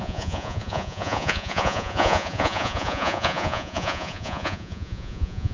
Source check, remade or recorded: remade